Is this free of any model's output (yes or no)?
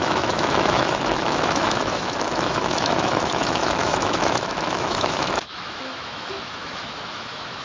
no